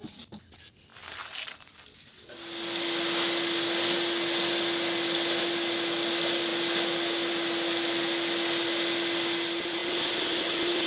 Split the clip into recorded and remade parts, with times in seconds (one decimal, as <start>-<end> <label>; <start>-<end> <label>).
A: 0.0-10.9 recorded